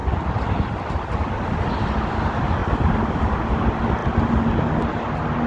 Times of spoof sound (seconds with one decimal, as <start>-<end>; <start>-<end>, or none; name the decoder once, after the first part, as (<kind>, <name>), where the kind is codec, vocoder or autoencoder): none